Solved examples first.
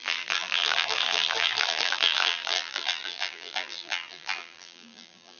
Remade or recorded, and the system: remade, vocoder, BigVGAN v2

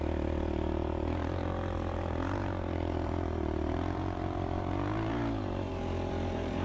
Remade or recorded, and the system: remade, vocoder, BigVGAN v2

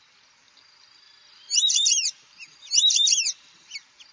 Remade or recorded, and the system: remade, vocoder, BigVGAN v2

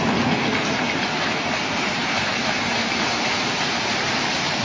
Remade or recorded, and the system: remade, vocoder, BigVGAN v2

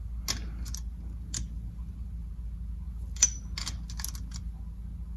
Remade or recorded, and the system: recorded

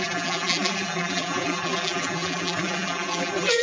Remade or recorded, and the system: remade, vocoder, BigVGAN v2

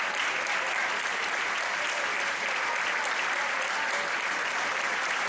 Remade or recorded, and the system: recorded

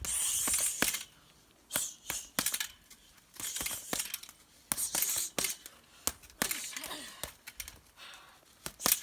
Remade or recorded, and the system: recorded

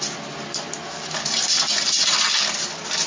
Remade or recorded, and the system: remade, vocoder, BigVGAN v2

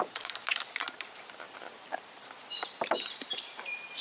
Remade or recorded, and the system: remade, vocoder, BigVGAN v2